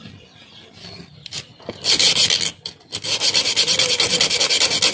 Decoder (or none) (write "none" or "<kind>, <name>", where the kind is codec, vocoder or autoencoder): none